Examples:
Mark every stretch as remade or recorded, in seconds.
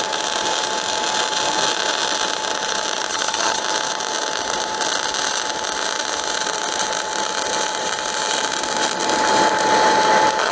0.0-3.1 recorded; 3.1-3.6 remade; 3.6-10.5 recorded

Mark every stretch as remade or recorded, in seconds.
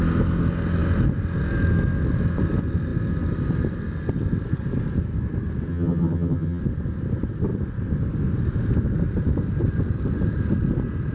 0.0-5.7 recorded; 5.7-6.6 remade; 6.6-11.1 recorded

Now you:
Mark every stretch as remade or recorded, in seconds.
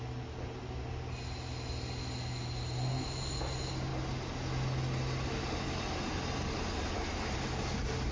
0.0-8.1 recorded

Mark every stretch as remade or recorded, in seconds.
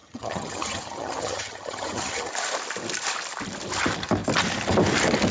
0.0-2.3 remade; 2.3-5.3 recorded